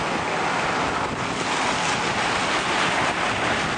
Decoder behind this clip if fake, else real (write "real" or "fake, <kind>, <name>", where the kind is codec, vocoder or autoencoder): real